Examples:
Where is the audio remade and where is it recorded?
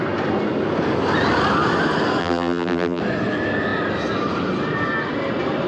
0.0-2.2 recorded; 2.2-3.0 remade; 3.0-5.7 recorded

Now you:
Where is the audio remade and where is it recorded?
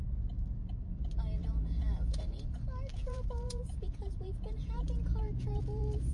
0.0-1.4 recorded; 1.4-2.5 remade; 2.5-2.9 recorded; 2.9-6.1 remade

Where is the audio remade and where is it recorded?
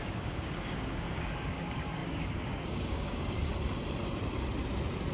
0.0-3.5 remade; 3.5-5.1 recorded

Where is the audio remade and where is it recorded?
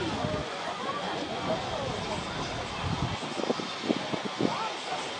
0.0-0.4 recorded; 0.4-1.5 remade; 1.5-5.2 recorded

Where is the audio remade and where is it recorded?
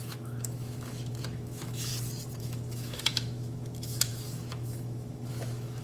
0.0-1.9 remade; 1.9-2.4 recorded; 2.4-5.8 remade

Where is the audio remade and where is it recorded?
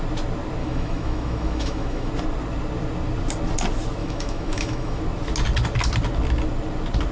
0.0-0.6 recorded; 0.6-2.1 remade; 2.1-4.0 recorded; 4.0-5.0 remade; 5.0-7.1 recorded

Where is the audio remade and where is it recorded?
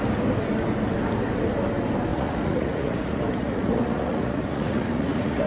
0.0-2.1 recorded; 2.1-5.5 remade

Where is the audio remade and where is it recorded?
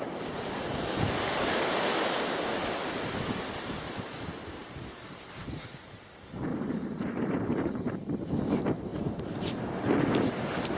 0.0-4.6 recorded; 4.6-6.0 remade; 6.0-6.5 recorded; 6.5-7.9 remade; 7.9-8.9 recorded; 8.9-9.7 remade; 9.7-10.8 recorded